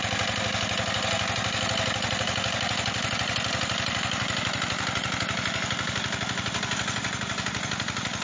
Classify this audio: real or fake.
real